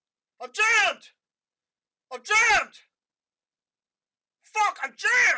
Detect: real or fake real